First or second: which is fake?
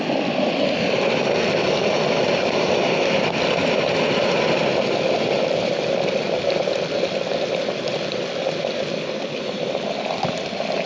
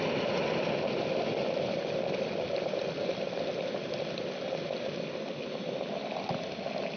first